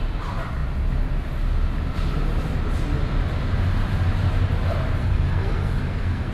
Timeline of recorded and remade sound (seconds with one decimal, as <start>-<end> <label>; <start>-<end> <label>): 0.0-5.0 recorded; 5.0-6.3 remade